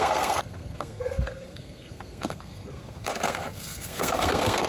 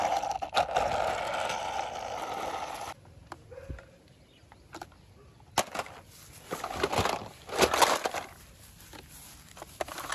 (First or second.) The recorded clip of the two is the second